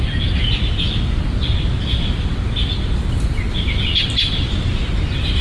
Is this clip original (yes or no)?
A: yes